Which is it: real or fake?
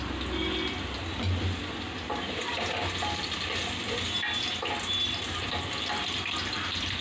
real